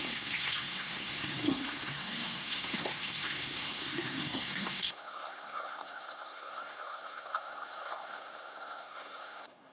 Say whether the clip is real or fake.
fake